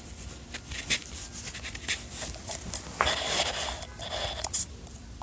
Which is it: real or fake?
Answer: real